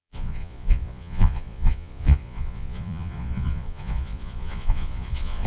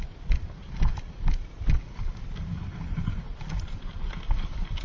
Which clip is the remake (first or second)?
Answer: first